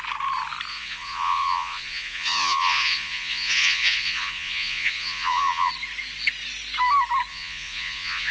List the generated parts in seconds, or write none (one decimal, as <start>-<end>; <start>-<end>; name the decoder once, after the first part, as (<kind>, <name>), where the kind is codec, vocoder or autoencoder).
0.7-5.7 (vocoder, Vocos); 7.3-8.3